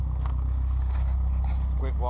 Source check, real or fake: fake